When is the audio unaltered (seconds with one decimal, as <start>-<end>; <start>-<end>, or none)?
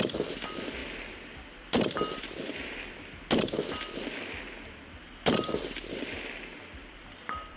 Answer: 0.0-0.8; 2.9-6.8